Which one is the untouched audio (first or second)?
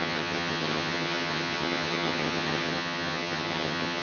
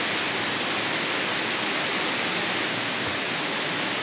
second